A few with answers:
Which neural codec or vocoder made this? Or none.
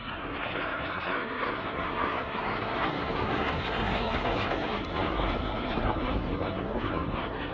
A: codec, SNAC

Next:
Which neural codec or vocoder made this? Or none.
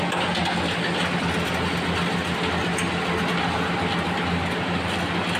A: none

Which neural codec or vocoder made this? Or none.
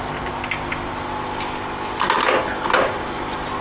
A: none